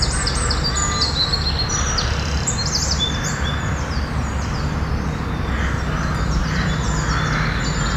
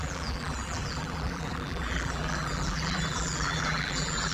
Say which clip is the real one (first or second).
first